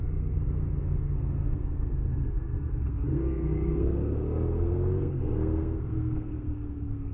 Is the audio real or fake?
fake